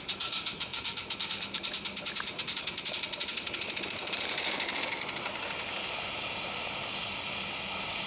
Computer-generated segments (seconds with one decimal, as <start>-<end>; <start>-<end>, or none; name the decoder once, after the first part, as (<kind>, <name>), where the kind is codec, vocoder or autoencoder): none